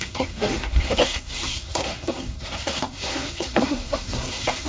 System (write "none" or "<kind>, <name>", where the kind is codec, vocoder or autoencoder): codec, SNAC